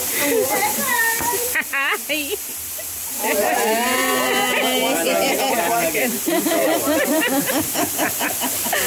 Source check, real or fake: fake